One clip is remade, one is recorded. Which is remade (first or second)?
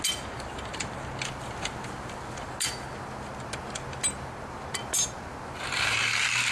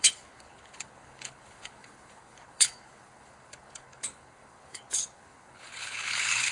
second